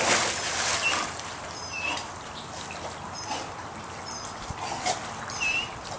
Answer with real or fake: real